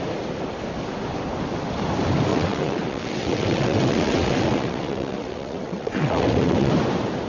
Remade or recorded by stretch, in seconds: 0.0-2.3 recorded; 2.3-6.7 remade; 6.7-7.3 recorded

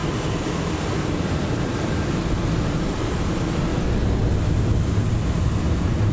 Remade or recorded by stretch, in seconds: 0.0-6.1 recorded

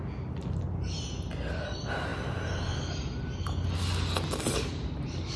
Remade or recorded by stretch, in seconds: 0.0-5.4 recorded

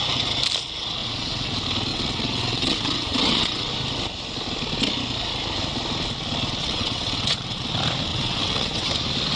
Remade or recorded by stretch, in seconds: 0.0-1.0 recorded; 1.0-1.5 remade; 1.5-1.9 recorded; 1.9-3.7 remade; 3.7-6.6 recorded; 6.6-7.6 remade; 7.6-8.1 recorded; 8.1-8.9 remade; 8.9-9.4 recorded

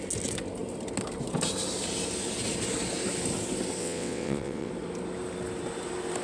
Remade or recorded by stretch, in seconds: 0.0-3.8 recorded; 3.8-4.7 remade; 4.7-6.2 recorded